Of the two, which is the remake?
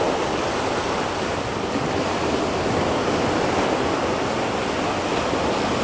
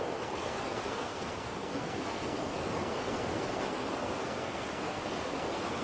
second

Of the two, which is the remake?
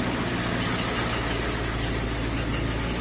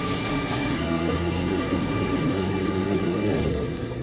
second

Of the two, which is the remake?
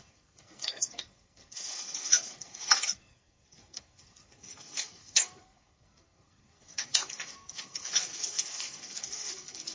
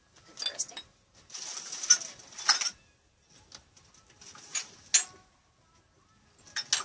first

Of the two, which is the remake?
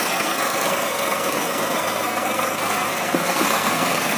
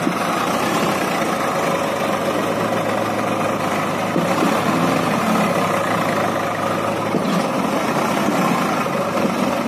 first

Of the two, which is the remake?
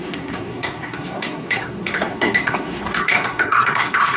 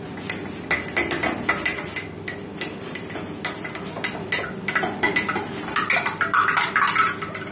first